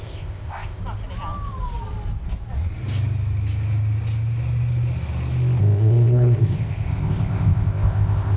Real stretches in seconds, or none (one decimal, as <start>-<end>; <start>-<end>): 0.8-5.6